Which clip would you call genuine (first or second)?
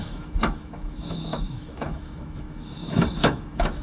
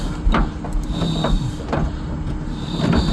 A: second